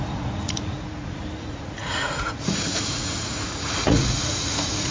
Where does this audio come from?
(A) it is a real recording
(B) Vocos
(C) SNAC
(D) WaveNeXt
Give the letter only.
B